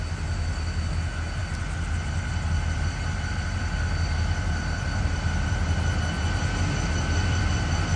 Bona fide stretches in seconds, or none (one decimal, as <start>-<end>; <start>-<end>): 0.0-8.0